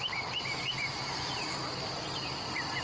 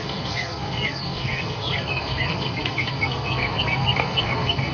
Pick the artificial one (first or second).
second